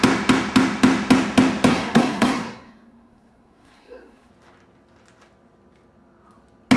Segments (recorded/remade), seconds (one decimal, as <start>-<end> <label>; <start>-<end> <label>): 0.0-1.7 recorded; 1.7-4.3 remade; 4.3-6.8 recorded